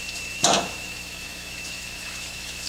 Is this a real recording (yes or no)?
no